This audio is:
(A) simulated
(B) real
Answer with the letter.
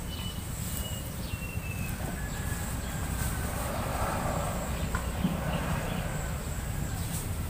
B